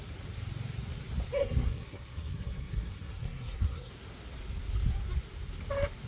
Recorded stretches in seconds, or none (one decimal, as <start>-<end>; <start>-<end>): 0.0-1.4; 3.9-6.1